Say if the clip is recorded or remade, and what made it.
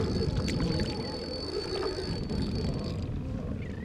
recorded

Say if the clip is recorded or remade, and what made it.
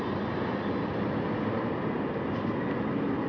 recorded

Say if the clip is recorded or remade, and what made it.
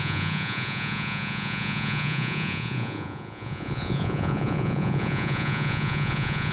remade, vocoder, Vocos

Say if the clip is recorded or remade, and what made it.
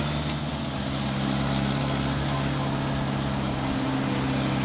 recorded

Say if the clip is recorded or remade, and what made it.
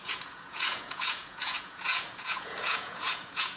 remade, vocoder, Vocos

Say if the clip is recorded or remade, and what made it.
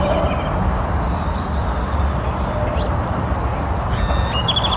recorded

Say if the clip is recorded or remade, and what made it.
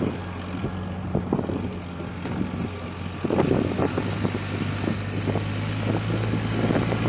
recorded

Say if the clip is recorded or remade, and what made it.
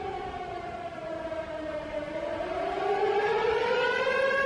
remade, vocoder, BigVGAN v2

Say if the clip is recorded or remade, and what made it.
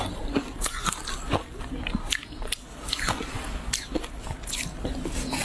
recorded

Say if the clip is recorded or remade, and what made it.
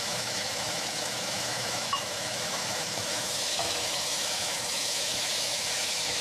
remade, autoencoder, DAC-VAE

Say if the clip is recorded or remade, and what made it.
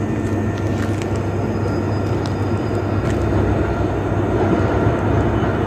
recorded